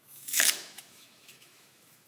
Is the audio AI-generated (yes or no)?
yes